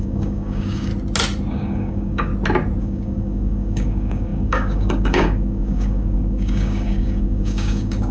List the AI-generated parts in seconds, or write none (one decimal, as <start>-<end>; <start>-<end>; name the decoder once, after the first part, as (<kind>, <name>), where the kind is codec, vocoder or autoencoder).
0.0-0.9 (codec, DAC); 1.5-2.3; 2.8-8.1